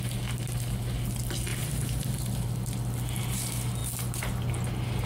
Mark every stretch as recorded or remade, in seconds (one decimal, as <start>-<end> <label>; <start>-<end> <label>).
0.0-1.5 recorded; 1.5-2.1 remade; 2.1-5.1 recorded